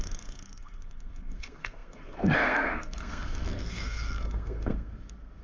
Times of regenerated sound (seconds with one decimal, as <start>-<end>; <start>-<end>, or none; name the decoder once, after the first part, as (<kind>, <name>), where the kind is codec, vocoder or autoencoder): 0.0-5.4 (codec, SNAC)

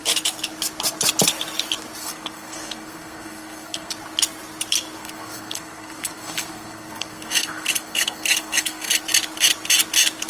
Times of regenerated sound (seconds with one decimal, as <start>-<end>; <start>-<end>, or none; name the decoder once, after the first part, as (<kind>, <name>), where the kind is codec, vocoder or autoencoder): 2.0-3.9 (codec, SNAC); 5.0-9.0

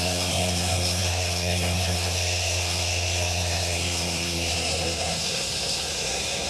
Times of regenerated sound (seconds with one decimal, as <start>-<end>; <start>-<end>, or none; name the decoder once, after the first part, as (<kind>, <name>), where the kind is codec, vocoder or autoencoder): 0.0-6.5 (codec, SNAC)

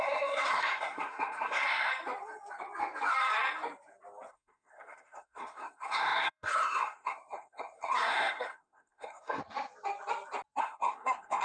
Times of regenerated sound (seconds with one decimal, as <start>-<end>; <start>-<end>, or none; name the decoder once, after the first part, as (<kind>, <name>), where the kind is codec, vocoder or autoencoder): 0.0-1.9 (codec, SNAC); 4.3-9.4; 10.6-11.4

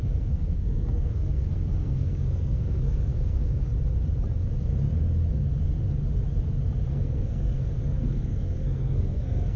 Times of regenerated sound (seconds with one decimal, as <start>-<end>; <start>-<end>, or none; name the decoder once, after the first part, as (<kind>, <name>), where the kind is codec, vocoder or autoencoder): 0.0-3.7 (codec, SNAC); 6.9-9.6

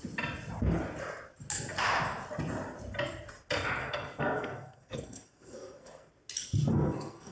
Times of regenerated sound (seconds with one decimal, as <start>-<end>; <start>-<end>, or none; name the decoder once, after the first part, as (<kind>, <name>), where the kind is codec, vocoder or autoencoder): 3.8-6.1 (codec, SNAC); 6.7-7.3